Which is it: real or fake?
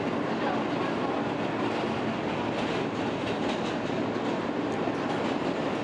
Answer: real